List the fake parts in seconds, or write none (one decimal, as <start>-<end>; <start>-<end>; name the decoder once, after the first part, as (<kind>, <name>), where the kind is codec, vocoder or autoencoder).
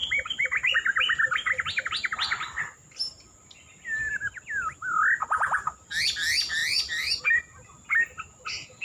none